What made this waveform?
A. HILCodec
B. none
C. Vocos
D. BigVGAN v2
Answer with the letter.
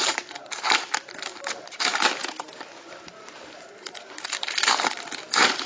D